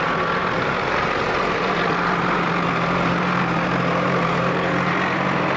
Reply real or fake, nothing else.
real